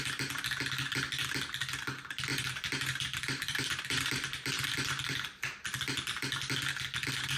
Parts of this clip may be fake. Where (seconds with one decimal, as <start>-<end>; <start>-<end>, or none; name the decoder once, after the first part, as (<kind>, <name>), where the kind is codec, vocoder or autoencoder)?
2.3-5.1 (vocoder, BigVGAN v2)